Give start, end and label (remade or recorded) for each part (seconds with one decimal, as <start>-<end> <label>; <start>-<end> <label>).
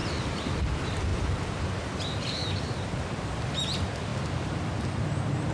0.0-0.5 remade; 0.5-1.1 recorded; 1.1-3.4 remade; 3.4-4.1 recorded; 4.1-5.5 remade